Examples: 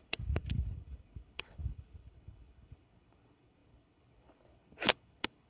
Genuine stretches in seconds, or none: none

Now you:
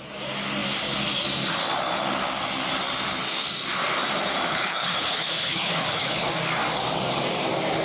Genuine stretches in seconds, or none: 0.0-4.5; 6.3-7.8

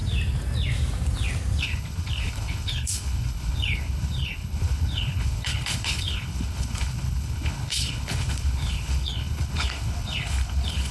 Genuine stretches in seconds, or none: 0.0-1.6